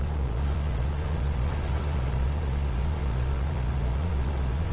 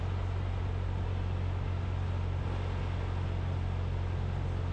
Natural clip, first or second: second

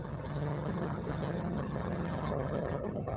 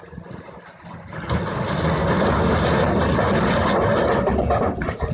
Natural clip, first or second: second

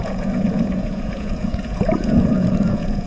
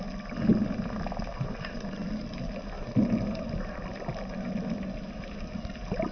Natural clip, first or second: second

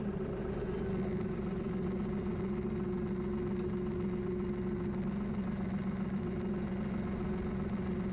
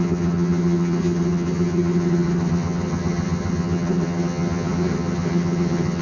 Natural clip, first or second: first